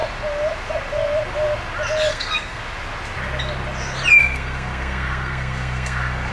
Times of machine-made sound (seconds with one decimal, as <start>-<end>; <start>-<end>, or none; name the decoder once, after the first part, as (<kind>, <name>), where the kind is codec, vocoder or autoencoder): 2.1-2.6 (codec, SNAC); 4.2-6.3